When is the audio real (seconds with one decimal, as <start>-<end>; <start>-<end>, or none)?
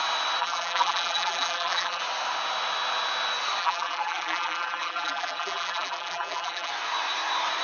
0.0-0.4; 2.0-3.6; 6.7-7.6